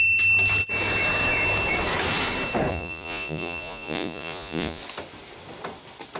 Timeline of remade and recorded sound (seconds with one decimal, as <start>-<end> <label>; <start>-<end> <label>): 0.0-2.7 recorded; 2.7-4.8 remade; 4.8-6.2 recorded